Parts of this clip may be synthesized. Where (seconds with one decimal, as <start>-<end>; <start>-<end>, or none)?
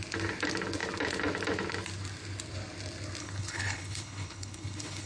3.2-5.1